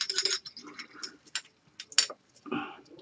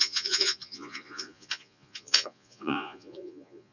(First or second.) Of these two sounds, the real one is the first